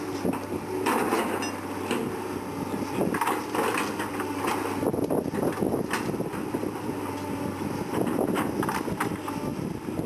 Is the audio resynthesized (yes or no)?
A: no